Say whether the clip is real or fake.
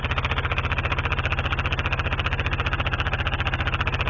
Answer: real